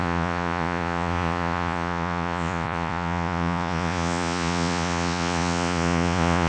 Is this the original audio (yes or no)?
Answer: no